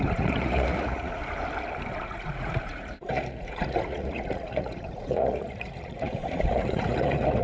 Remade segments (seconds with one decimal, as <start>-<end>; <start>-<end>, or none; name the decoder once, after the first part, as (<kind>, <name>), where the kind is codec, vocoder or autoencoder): 0.0-1.2 (vocoder, Vocos); 2.1-7.4